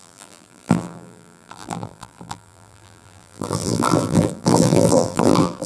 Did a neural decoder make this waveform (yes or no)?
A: yes